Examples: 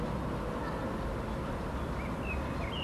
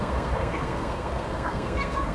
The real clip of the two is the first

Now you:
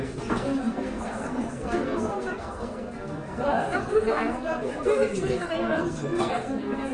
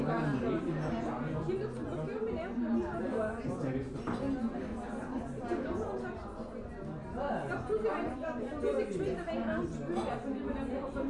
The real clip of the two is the second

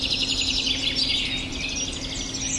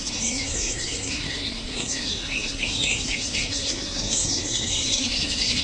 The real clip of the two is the first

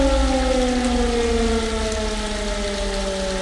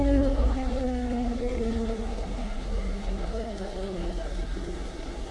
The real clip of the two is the first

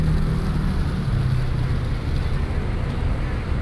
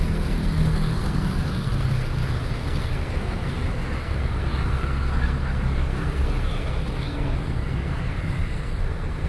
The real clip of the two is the first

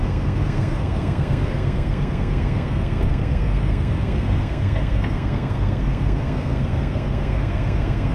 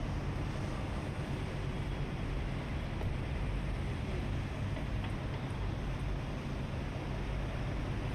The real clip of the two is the second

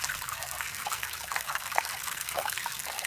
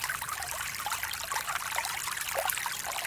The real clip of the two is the second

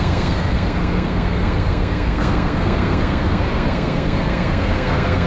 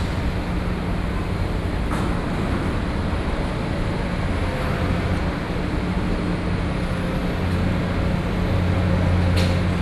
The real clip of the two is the second